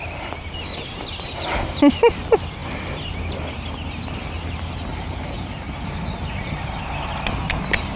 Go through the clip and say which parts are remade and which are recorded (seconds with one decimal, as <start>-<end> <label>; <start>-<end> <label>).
0.0-4.9 recorded; 4.9-7.2 remade; 7.2-8.0 recorded